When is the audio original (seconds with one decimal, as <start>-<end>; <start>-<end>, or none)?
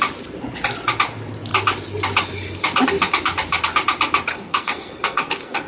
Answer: 0.0-4.3